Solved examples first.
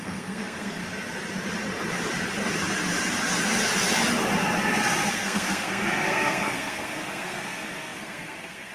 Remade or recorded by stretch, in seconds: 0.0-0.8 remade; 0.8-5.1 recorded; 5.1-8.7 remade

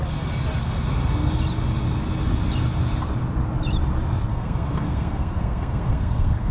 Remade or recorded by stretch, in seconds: 0.0-4.3 recorded; 4.3-6.5 remade

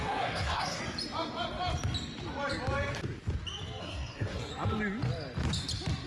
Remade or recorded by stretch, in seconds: 0.0-0.8 remade; 0.8-3.8 recorded; 3.8-4.5 remade; 4.5-6.1 recorded

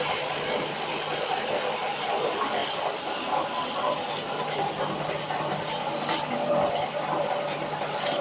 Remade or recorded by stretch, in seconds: 0.0-8.2 recorded

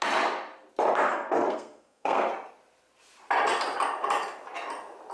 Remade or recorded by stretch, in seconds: 0.0-1.1 recorded; 1.1-2.3 remade; 2.3-5.1 recorded

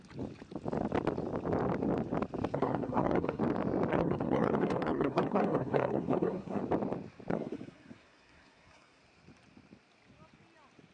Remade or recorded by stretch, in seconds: 0.0-2.5 recorded; 2.5-3.4 remade; 3.4-3.9 recorded; 3.9-6.6 remade; 6.6-7.3 recorded; 7.3-9.0 remade; 9.0-10.9 recorded